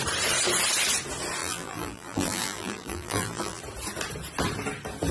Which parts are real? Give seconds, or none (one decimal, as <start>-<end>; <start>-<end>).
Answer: 0.0-1.4; 3.6-5.1